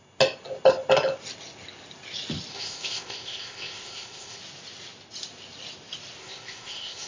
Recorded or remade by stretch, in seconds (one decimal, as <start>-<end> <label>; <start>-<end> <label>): 0.0-2.5 recorded; 2.5-4.4 remade; 4.4-6.2 recorded; 6.2-7.1 remade